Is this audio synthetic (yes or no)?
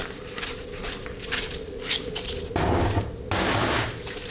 no